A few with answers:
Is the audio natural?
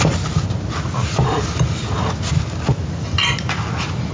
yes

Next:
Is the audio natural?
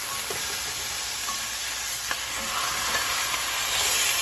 yes